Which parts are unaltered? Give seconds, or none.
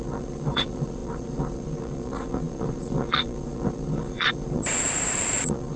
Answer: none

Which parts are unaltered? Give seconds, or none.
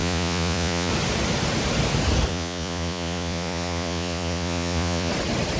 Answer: 0.9-2.3; 5.1-5.6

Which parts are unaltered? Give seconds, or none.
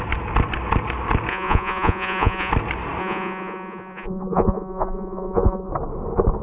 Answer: 0.0-1.3; 2.5-3.0; 5.7-6.4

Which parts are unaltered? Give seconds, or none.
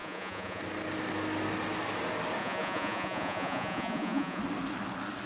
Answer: 0.6-2.4; 4.4-5.3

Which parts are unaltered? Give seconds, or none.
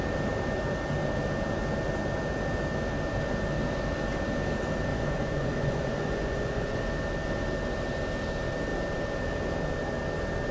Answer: 0.0-4.9; 6.8-10.5